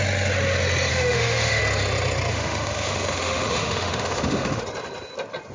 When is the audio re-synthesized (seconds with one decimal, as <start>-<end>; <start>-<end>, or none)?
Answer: 0.9-1.6; 2.3-4.6